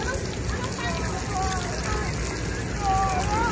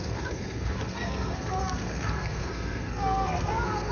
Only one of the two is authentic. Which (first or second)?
first